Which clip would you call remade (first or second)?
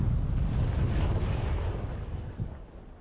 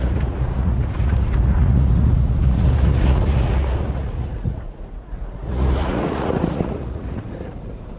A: second